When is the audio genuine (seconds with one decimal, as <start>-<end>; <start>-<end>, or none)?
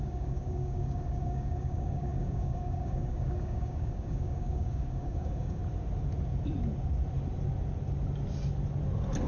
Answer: 5.6-9.3